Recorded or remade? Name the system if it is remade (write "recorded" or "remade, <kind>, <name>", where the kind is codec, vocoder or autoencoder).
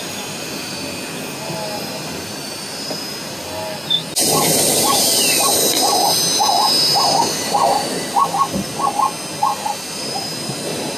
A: recorded